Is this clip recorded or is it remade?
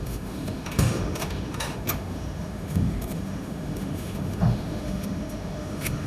remade